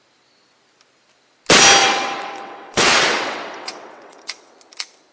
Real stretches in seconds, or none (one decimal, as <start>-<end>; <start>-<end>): 0.0-1.8; 4.5-5.1